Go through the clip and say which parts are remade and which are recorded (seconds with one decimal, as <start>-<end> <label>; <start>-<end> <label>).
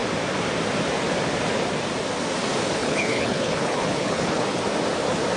0.0-2.8 recorded; 2.8-4.6 remade; 4.6-5.4 recorded